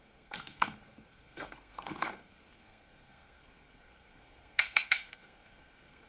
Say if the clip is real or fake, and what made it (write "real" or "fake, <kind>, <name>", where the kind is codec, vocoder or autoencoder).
fake, codec, SNAC